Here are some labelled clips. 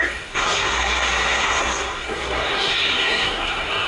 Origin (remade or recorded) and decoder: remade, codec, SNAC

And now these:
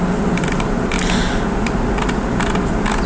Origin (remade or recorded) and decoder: recorded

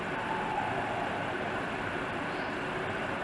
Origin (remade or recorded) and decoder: remade, vocoder, BigVGAN v2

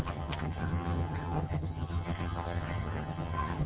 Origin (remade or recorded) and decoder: remade, vocoder, HiFi-GAN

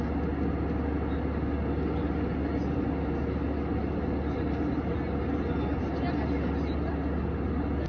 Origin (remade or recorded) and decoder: recorded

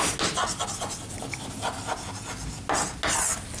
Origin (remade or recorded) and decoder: recorded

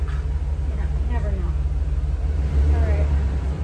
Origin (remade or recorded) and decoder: recorded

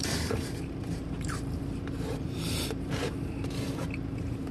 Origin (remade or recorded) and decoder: remade, vocoder, BigVGAN v2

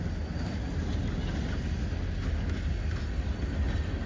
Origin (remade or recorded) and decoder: recorded